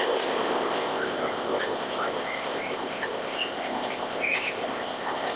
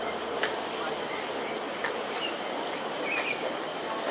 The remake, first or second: first